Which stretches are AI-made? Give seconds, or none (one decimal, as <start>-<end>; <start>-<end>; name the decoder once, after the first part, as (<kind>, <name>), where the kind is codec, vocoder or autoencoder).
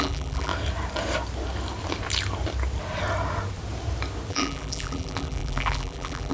0.0-0.5 (vocoder, BigVGAN v2); 4.3-6.3